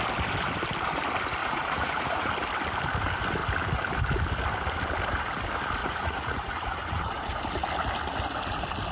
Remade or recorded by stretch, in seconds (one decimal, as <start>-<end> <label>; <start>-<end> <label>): 0.0-1.4 recorded; 1.4-2.3 remade; 2.3-5.8 recorded; 5.8-7.3 remade; 7.3-8.9 recorded